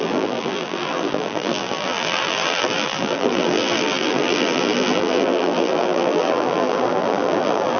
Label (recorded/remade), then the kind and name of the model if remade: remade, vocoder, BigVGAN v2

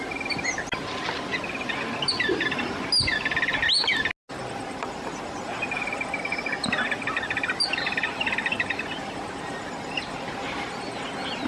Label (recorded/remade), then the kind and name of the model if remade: recorded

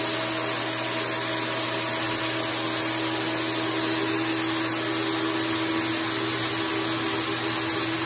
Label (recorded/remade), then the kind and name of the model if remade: recorded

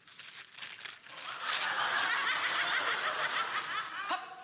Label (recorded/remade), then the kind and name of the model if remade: recorded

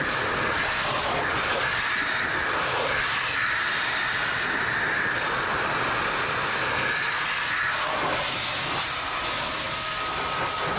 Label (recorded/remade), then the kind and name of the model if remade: recorded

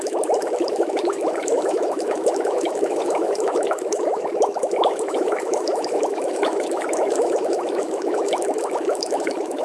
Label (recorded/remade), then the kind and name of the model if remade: remade, autoencoder, DAC-VAE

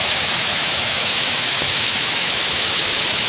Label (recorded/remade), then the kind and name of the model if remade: remade, autoencoder, DAC-VAE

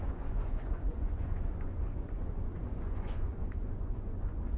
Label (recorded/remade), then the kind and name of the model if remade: remade, vocoder, Vocos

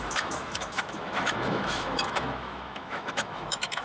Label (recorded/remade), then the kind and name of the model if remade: remade, autoencoder, DAC-VAE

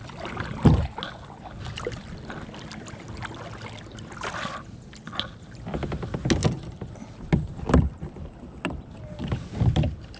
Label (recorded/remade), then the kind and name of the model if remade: recorded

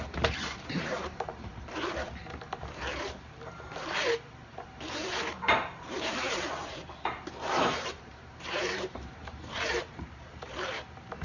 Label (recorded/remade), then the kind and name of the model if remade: remade, vocoder, BigVGAN v2